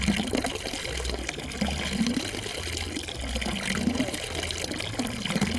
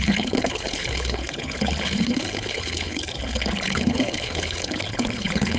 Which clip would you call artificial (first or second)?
second